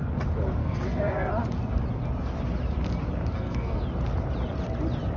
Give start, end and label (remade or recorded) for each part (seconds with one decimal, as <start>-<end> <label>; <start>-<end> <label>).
0.0-0.6 recorded; 0.6-1.3 remade; 1.3-3.3 recorded; 3.3-3.8 remade; 3.8-5.2 recorded